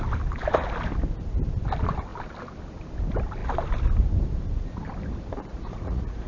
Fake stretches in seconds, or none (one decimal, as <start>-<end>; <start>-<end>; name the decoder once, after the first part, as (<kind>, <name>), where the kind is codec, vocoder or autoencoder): 5.5-6.3 (vocoder, Vocos)